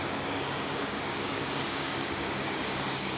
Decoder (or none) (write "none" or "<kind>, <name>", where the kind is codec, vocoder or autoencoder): codec, DAC